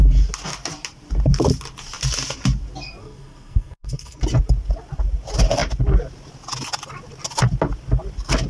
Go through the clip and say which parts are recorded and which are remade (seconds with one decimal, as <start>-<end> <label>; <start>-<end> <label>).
0.0-3.0 recorded; 3.0-4.2 remade; 4.2-8.5 recorded